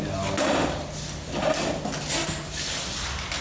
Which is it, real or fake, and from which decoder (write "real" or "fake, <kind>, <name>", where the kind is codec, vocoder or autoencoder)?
real